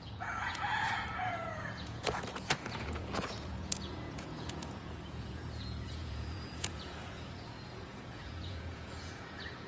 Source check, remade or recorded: remade